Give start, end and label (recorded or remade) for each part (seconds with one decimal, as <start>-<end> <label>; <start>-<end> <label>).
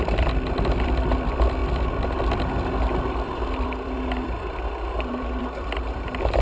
0.0-6.4 remade